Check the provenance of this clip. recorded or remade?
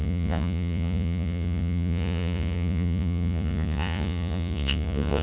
remade